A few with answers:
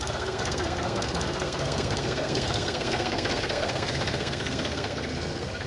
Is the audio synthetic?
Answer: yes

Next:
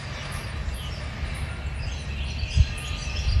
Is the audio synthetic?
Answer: no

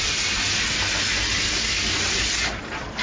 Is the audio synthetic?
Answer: no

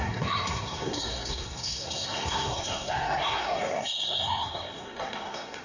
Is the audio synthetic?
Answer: yes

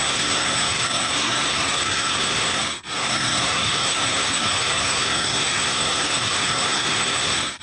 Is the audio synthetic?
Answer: yes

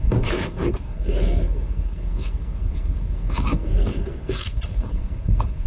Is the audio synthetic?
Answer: yes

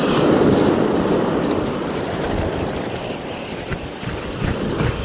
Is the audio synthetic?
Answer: no